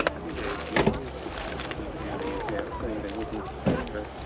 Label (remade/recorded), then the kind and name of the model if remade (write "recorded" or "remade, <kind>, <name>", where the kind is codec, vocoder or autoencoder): recorded